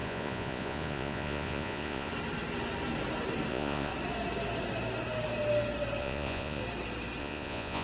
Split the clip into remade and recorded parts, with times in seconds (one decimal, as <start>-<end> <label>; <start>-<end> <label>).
0.0-2.1 remade; 2.1-3.5 recorded; 3.5-3.9 remade; 3.9-6.0 recorded; 6.0-6.6 remade; 6.6-7.2 recorded; 7.2-7.8 remade